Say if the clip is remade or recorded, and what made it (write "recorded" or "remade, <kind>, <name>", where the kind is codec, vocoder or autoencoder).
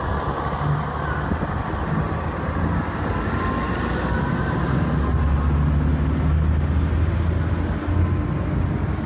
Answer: recorded